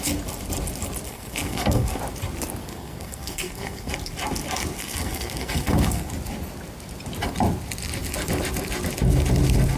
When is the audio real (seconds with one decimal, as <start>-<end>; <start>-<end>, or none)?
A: 0.0-1.1; 2.0-2.6; 3.9-4.8; 6.1-9.8